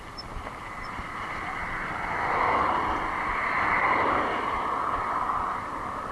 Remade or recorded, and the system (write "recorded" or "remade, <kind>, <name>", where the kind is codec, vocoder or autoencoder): recorded